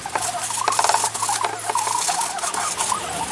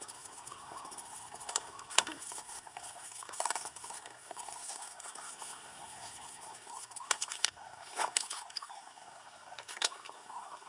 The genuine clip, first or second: first